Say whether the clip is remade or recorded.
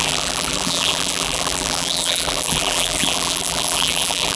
remade